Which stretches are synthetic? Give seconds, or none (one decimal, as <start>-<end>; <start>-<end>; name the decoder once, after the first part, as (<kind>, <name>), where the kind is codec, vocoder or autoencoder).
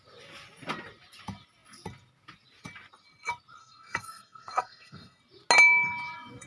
3.6-5.2 (codec, SNAC)